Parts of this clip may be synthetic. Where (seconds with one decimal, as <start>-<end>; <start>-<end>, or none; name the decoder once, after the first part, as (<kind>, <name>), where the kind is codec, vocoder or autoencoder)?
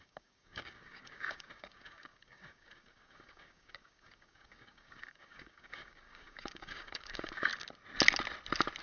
0.0-7.5 (codec, DAC)